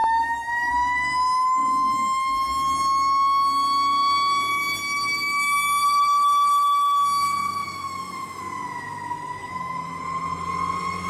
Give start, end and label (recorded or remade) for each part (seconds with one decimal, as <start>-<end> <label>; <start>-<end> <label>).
0.0-0.7 remade; 0.7-7.4 recorded; 7.4-8.4 remade; 8.4-9.4 recorded; 9.4-10.0 remade; 10.0-11.1 recorded